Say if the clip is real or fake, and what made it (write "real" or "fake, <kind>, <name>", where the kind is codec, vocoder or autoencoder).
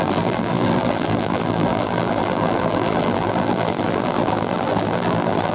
fake, vocoder, BigVGAN v2